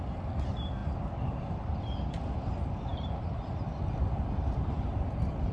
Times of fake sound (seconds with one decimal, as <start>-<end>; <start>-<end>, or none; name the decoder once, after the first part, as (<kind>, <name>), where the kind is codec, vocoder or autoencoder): none